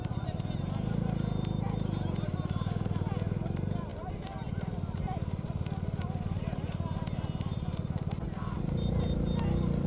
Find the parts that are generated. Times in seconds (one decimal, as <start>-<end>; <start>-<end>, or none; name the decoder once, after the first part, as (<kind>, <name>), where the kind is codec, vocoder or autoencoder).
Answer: none